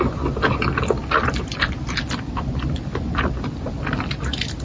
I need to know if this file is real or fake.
real